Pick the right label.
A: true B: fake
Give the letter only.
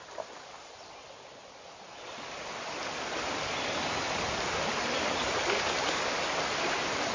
A